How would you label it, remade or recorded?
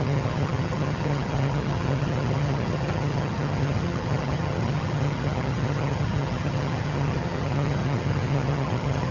remade